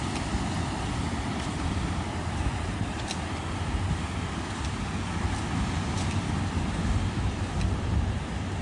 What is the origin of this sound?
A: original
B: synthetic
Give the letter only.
A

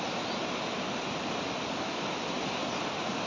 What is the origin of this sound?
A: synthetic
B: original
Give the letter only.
B